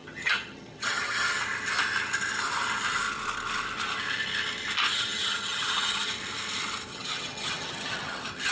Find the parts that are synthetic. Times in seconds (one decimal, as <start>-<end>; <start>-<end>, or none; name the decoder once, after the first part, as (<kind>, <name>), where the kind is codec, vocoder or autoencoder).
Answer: 0.0-1.4 (vocoder, HiFi-GAN); 4.9-6.1; 6.9-8.5